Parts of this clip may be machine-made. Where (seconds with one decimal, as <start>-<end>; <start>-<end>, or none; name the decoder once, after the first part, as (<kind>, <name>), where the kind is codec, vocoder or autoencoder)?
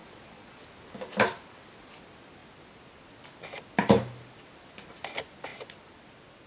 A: 0.0-0.6 (vocoder, Vocos)